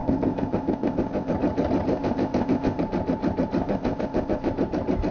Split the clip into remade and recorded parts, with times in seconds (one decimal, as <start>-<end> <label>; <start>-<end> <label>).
0.0-1.3 remade; 1.3-1.9 recorded; 1.9-2.8 remade; 2.8-3.6 recorded; 3.6-4.5 remade; 4.5-5.1 recorded